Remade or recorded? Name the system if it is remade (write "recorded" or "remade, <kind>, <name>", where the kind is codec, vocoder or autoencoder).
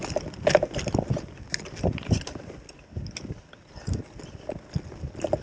recorded